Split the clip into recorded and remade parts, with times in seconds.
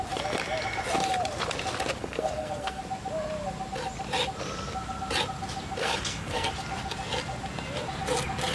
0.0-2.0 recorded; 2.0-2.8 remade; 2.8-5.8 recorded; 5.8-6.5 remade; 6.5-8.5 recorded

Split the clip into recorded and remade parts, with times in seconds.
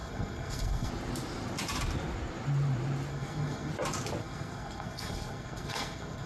0.0-0.9 remade; 0.9-3.1 recorded; 3.1-3.7 remade; 3.7-4.2 recorded; 4.2-6.3 remade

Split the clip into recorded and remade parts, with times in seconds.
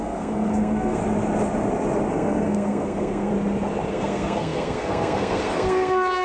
0.0-1.0 remade; 1.0-2.1 recorded; 2.1-3.3 remade; 3.3-3.9 recorded; 3.9-6.2 remade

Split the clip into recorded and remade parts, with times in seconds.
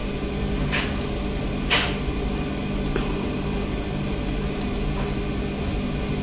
0.0-6.2 recorded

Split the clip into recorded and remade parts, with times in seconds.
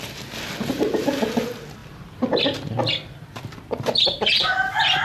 0.0-5.0 recorded